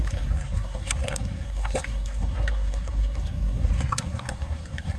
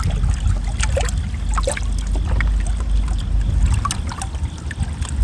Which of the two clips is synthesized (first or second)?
first